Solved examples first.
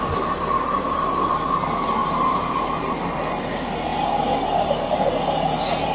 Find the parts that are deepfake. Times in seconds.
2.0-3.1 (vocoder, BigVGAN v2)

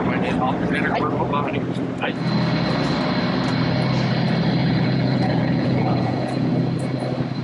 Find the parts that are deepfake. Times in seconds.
4.6-6.5 (vocoder, Vocos)

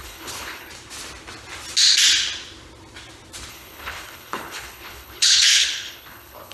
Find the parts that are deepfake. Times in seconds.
0.0-0.7 (codec, HILCodec); 3.5-6.5

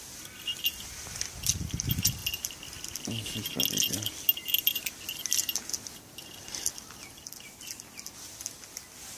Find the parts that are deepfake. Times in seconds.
none

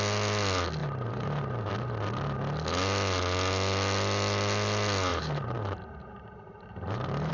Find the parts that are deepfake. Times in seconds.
0.8-1.7 (vocoder, BigVGAN v2); 5.1-7.3

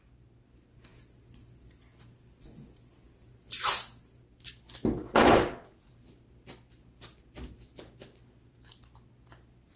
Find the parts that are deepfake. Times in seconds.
none

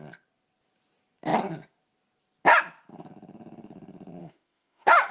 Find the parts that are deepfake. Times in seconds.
4.2-5.1 (autoencoder, DAC-VAE)

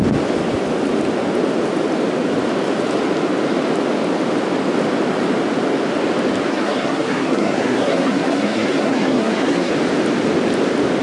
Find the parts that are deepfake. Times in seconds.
6.5-9.7 (codec, SNAC)